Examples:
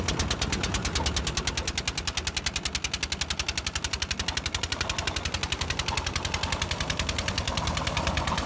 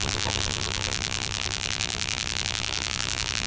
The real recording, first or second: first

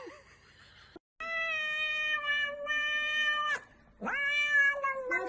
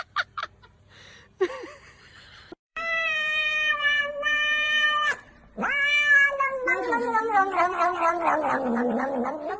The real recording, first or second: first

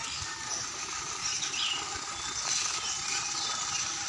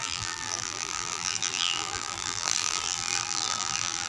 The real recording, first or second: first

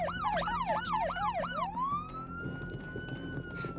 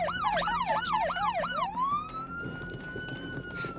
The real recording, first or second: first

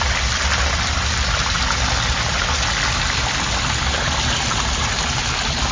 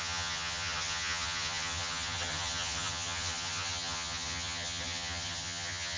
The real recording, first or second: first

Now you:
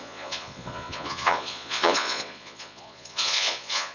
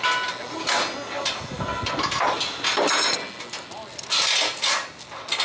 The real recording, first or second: second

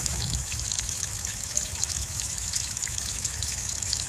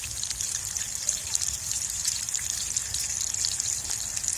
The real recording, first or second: second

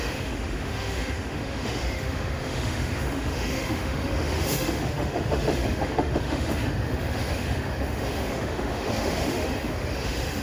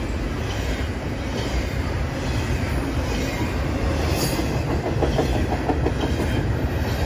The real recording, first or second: second